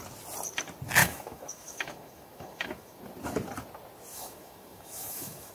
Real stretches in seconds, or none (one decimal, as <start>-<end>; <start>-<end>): 0.0-1.0; 3.0-4.1